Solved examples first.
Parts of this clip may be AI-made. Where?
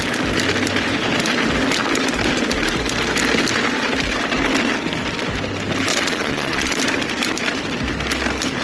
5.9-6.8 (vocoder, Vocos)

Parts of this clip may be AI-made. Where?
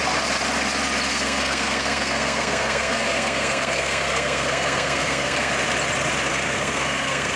1.1-5.5 (codec, SNAC); 6.3-7.4